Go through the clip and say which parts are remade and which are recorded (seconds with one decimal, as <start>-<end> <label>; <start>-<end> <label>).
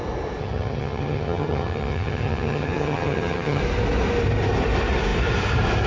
0.0-0.4 recorded; 0.4-3.6 remade; 3.6-5.9 recorded